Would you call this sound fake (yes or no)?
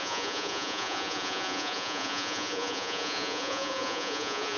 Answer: yes